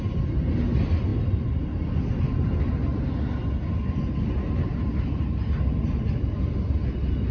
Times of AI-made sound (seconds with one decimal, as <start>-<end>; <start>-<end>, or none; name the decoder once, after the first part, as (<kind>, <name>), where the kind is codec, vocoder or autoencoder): none